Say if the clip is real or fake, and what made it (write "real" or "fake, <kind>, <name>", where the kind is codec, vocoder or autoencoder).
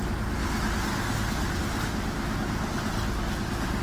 real